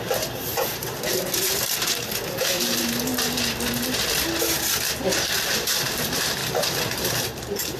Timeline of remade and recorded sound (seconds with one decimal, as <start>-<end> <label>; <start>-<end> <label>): 0.0-0.5 remade; 0.5-1.1 recorded; 1.1-3.1 remade; 3.1-4.8 recorded; 4.8-7.8 remade